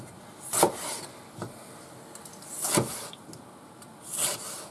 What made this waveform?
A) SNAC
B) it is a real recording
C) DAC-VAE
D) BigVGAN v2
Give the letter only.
B